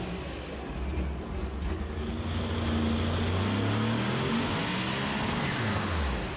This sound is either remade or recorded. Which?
recorded